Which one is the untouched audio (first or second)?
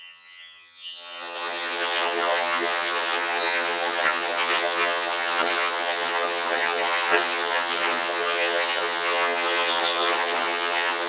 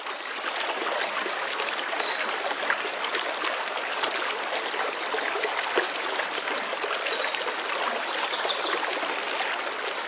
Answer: second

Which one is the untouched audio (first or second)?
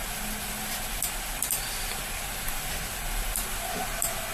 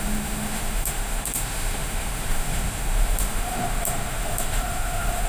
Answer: first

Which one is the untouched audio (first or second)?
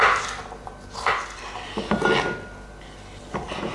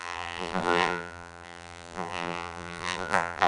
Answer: first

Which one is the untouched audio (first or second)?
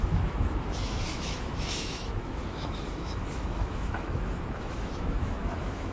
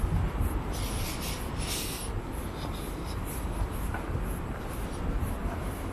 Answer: second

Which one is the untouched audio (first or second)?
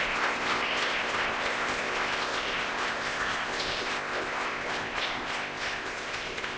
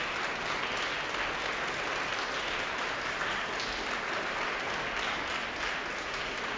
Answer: second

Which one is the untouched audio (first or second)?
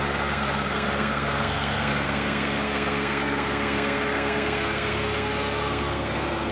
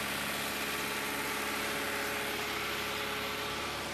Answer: second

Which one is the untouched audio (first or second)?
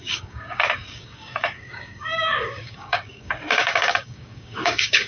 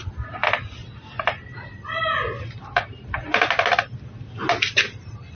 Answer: second